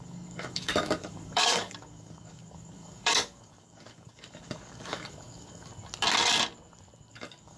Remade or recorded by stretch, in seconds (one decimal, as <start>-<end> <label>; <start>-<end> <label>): 0.0-5.7 remade; 5.7-7.1 recorded; 7.1-7.6 remade